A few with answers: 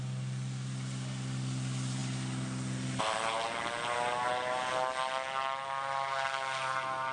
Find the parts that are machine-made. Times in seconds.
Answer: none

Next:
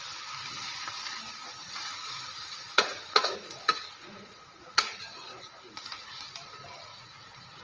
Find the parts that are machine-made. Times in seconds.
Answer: 1.6-6.2 (vocoder, Vocos); 6.9-7.6

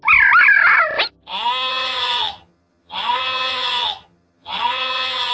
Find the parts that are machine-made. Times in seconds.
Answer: 1.7-5.3 (vocoder, HiFi-GAN)

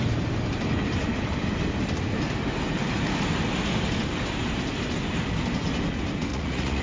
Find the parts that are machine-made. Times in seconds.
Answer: 6.3-6.8 (vocoder, Vocos)

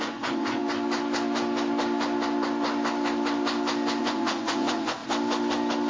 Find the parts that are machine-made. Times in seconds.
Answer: 0.0-0.6 (vocoder, Vocos); 4.0-5.0